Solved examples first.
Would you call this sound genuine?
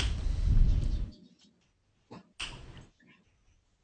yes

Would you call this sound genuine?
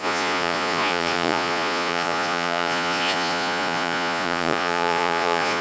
no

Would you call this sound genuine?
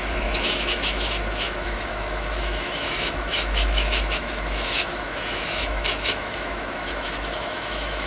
no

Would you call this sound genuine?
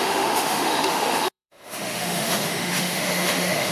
no